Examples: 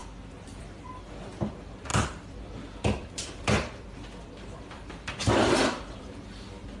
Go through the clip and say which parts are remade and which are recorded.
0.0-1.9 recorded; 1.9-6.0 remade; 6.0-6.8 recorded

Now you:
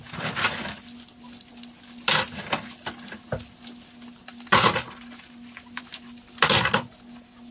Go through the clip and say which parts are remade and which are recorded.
0.0-7.5 recorded

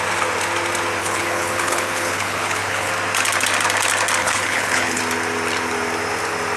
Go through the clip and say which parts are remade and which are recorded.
0.0-1.0 recorded; 1.0-2.9 remade; 2.9-4.2 recorded; 4.2-5.0 remade; 5.0-6.6 recorded

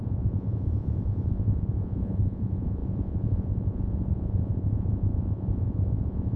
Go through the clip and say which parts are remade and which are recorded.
0.0-6.4 remade

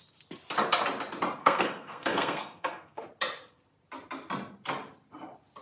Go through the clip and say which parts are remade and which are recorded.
0.0-1.4 recorded; 1.4-3.0 remade; 3.0-5.6 recorded

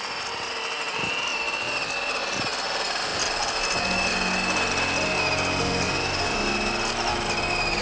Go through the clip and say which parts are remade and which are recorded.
0.0-7.8 recorded